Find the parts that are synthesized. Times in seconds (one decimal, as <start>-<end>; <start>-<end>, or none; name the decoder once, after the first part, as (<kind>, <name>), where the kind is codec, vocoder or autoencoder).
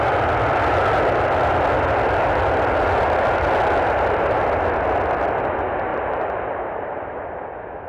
5.9-7.3 (vocoder, BigVGAN v2)